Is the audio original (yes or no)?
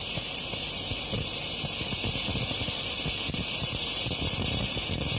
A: yes